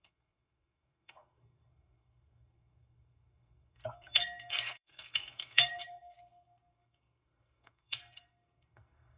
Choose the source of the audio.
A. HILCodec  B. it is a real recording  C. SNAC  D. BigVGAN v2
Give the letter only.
C